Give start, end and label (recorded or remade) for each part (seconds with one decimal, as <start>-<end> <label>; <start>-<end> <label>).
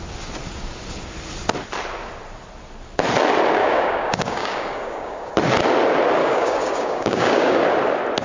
0.0-3.6 recorded; 3.6-5.3 remade; 5.3-6.2 recorded; 6.2-7.6 remade; 7.6-8.2 recorded